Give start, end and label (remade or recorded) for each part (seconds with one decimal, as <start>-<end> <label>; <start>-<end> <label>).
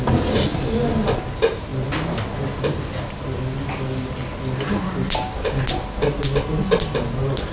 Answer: 0.0-7.5 recorded